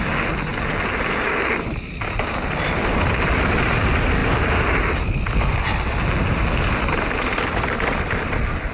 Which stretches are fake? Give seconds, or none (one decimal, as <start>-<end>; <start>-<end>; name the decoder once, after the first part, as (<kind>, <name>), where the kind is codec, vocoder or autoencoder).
none